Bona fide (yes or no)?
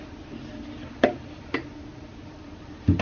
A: yes